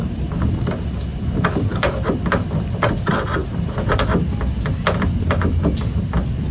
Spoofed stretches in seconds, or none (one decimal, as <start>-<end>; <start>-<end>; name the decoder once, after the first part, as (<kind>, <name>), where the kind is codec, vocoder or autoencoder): none